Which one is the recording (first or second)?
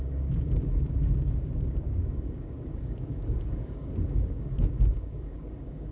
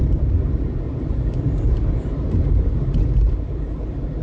second